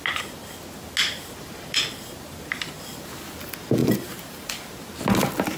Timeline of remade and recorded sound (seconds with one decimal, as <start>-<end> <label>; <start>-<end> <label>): 0.0-3.8 recorded; 3.8-4.6 remade; 4.6-5.6 recorded